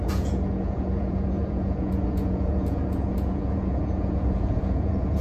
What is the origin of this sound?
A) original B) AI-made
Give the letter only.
B